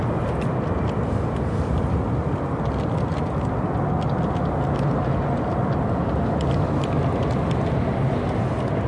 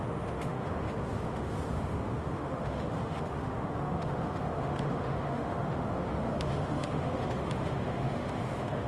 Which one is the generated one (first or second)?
second